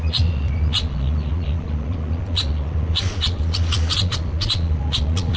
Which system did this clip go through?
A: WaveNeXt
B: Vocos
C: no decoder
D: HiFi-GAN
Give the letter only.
B